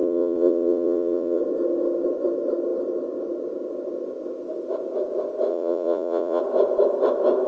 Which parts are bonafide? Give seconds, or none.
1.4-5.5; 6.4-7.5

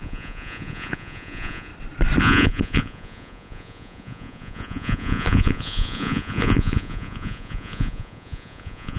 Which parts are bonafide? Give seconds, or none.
1.7-2.2

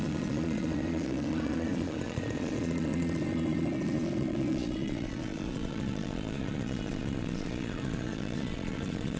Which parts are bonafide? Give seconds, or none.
none

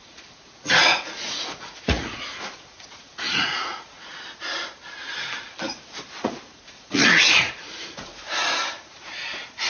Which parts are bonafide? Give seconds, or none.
4.1-6.2; 8.1-8.7

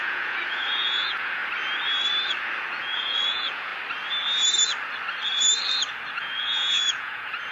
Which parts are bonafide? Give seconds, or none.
1.4-2.8; 3.7-6.1

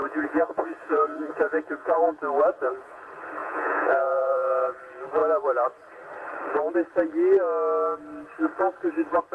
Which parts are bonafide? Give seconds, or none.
2.1-2.5; 3.0-3.4; 4.8-9.3

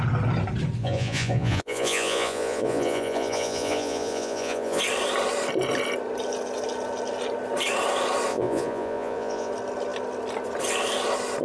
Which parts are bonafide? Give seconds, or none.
0.0-0.8; 4.8-8.3; 9.5-11.4

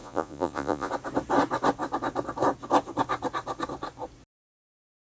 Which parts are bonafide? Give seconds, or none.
0.9-5.2